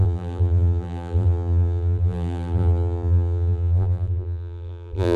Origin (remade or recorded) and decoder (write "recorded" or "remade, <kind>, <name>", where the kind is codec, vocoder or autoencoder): remade, vocoder, BigVGAN v2